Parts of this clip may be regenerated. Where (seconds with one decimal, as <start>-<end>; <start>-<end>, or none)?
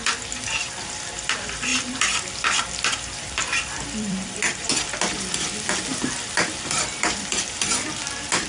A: 1.7-4.7; 5.9-7.4